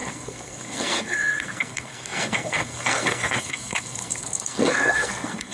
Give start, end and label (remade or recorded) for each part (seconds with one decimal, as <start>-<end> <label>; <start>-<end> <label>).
0.0-5.5 remade